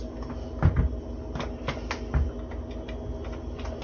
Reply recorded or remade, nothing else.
recorded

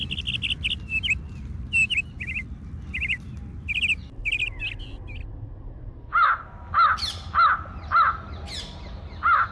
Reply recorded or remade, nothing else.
recorded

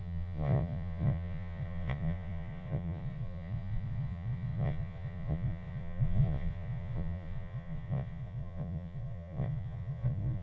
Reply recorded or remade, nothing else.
remade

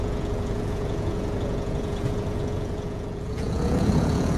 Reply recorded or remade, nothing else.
remade